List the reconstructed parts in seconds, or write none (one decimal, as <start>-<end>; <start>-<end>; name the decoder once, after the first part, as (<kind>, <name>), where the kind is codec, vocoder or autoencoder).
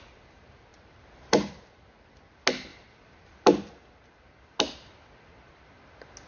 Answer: 0.7-2.3 (vocoder, BigVGAN v2); 2.7-4.0